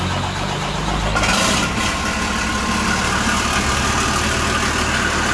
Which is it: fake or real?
real